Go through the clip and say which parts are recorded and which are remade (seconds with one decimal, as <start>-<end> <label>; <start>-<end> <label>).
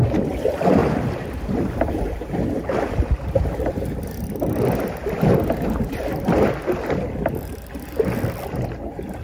0.0-0.8 recorded; 0.8-1.4 remade; 1.4-9.2 recorded